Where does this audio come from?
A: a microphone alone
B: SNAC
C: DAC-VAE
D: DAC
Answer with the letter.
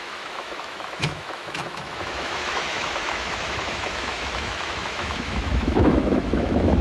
C